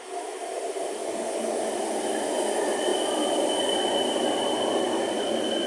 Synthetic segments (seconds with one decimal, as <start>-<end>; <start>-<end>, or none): 1.0-1.6